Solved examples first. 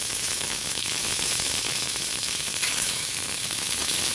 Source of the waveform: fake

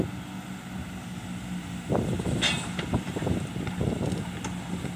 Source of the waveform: real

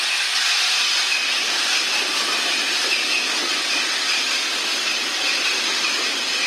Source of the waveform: real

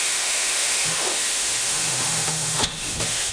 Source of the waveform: fake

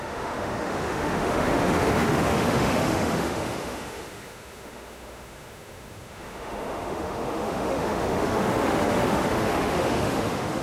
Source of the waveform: fake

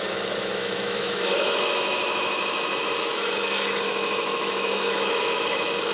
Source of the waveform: fake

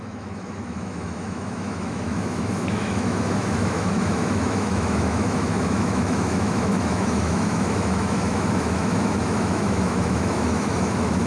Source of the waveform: fake